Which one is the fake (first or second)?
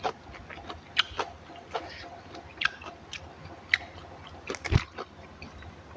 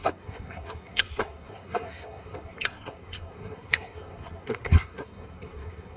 second